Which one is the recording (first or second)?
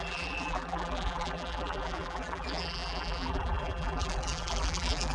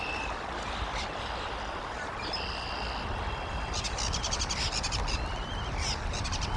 second